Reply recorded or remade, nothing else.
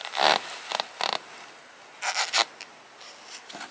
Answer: recorded